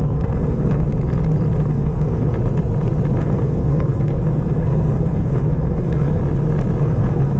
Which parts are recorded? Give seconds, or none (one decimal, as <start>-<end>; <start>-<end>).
0.9-1.7; 2.3-3.2; 6.2-6.8

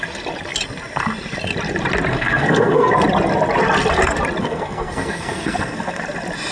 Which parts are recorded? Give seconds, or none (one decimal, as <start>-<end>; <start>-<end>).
0.0-2.1; 2.9-4.4; 6.0-6.5

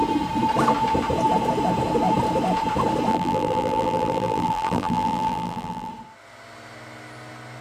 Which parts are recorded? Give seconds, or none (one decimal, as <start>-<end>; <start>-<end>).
0.0-3.1; 5.9-7.6